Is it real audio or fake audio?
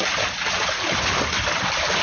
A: real